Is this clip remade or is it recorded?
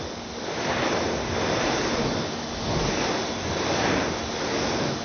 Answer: recorded